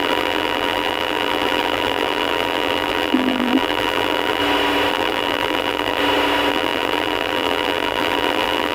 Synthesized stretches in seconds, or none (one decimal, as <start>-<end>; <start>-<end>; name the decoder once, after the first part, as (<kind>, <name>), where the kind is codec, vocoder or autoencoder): 0.0-4.4 (vocoder, BigVGAN v2); 4.9-6.0; 6.5-8.7